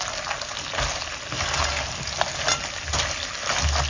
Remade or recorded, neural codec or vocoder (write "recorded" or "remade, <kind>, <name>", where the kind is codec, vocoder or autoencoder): recorded